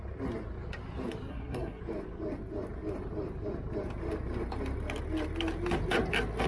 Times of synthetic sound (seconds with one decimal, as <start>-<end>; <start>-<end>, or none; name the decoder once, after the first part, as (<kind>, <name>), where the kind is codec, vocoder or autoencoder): 1.3-1.8 (codec, SNAC)